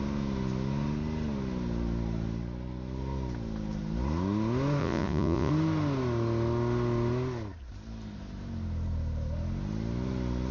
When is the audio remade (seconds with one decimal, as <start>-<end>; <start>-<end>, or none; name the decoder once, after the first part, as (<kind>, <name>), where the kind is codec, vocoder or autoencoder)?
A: 4.8-5.5 (vocoder, Vocos)